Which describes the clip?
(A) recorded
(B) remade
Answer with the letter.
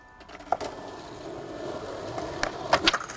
A